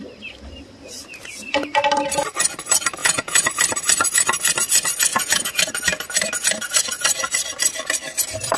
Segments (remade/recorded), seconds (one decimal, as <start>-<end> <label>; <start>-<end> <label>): 0.0-3.0 recorded; 3.0-3.5 remade; 3.5-5.1 recorded; 5.1-5.6 remade; 5.6-8.6 recorded